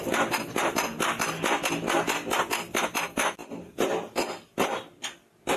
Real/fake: real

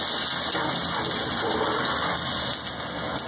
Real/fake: real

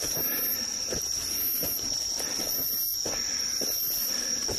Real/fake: real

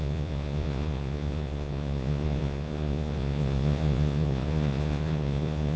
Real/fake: fake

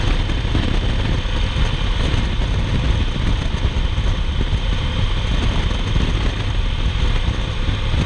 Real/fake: real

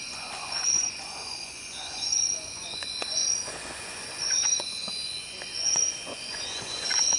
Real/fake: fake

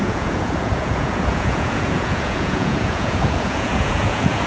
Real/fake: fake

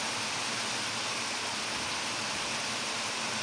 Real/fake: real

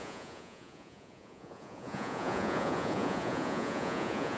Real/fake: fake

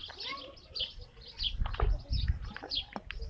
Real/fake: real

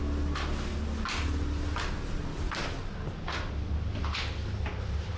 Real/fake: real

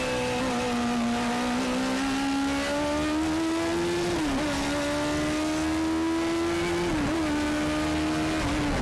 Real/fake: real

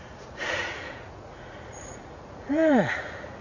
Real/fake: fake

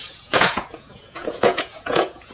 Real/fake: fake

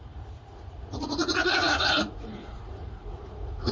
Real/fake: fake